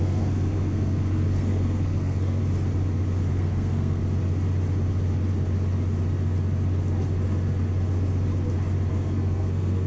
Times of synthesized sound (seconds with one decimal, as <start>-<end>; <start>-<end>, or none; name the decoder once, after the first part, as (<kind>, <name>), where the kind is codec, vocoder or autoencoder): 0.0-2.4 (codec, SNAC); 3.3-4.0; 8.9-9.9